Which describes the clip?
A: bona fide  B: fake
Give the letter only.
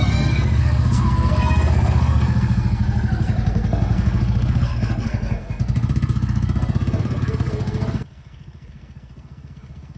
B